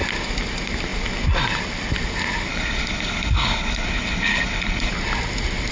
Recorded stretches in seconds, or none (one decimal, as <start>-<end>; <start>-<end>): 0.0-2.5; 4.9-5.7